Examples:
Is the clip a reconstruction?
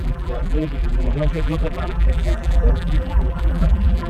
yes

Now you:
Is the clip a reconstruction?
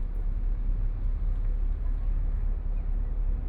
no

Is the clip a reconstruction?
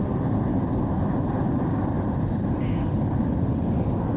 no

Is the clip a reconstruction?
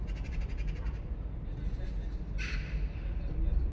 no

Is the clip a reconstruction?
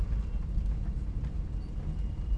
no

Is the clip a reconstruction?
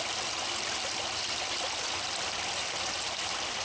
no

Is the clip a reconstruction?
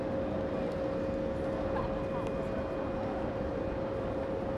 no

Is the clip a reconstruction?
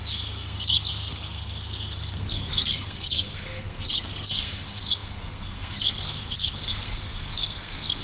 yes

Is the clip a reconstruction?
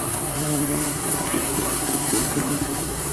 yes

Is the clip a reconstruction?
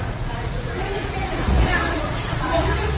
yes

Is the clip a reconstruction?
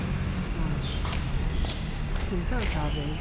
no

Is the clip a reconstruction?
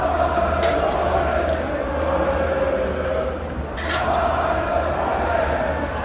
no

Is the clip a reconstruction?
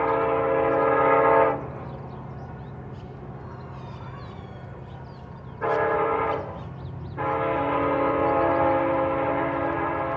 no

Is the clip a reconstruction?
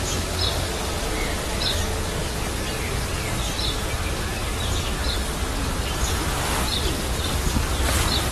no